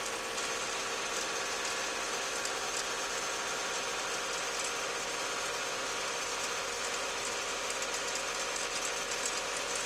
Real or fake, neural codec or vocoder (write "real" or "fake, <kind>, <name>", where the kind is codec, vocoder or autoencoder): real